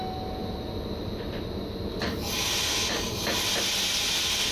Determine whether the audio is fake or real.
real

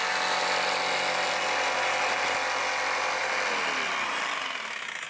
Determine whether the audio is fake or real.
real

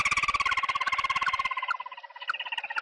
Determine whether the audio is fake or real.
real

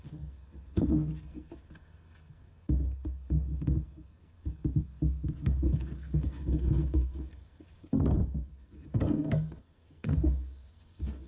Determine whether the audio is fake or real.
fake